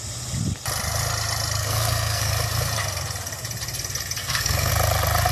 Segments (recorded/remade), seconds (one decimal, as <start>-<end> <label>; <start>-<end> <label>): 0.0-1.6 recorded; 1.6-2.3 remade; 2.3-4.2 recorded; 4.2-4.7 remade; 4.7-5.3 recorded